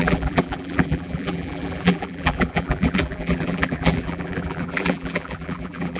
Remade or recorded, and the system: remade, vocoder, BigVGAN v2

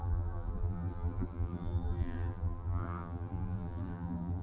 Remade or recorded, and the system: remade, vocoder, BigVGAN v2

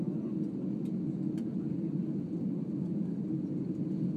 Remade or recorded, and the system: recorded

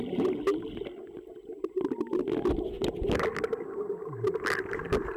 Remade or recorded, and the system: recorded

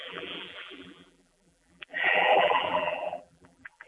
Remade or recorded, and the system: remade, vocoder, BigVGAN v2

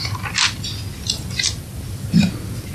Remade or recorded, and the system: recorded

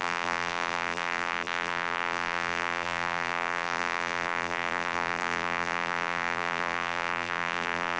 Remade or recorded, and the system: remade, vocoder, BigVGAN v2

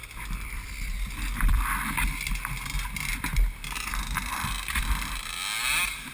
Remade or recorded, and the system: recorded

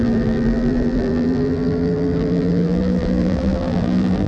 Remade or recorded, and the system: remade, vocoder, BigVGAN v2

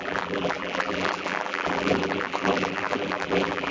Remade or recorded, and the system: remade, vocoder, BigVGAN v2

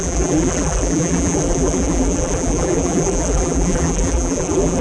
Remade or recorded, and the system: remade, vocoder, BigVGAN v2